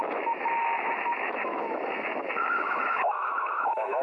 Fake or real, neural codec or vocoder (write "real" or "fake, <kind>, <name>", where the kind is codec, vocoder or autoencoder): fake, autoencoder, DAC-VAE